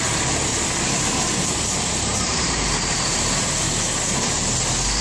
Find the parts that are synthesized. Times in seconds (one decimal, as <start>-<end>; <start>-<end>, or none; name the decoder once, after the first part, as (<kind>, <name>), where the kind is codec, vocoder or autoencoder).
0.5-3.5 (vocoder, BigVGAN v2)